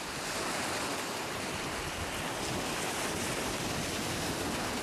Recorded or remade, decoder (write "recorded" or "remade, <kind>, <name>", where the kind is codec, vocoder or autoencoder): recorded